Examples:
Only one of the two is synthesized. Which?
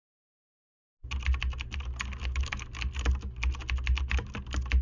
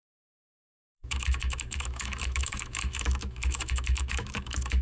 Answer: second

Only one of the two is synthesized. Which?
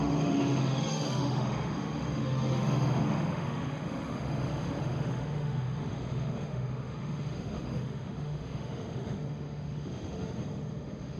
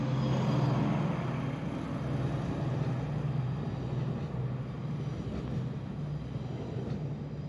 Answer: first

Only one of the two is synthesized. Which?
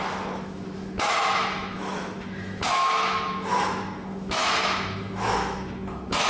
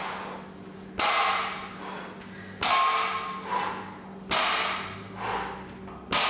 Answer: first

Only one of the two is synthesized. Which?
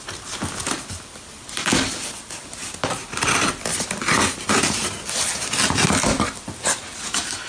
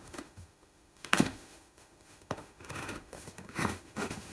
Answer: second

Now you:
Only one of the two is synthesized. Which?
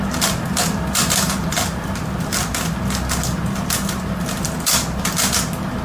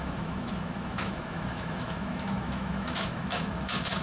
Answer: second